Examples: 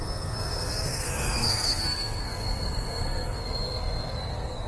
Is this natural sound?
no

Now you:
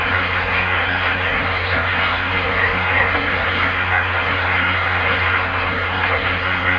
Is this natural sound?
no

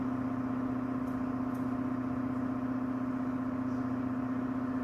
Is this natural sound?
yes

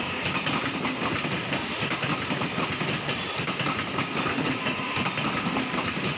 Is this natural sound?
yes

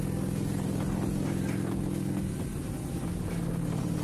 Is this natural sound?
yes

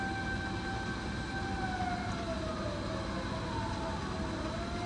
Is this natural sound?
yes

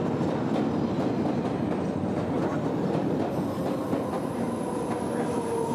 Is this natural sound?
yes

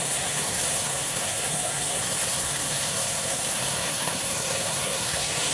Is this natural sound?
no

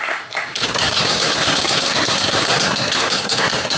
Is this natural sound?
no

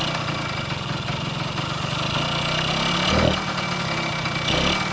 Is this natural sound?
yes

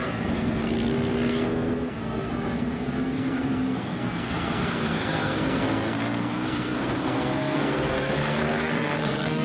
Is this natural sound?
no